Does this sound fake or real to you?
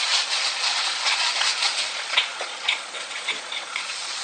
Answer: fake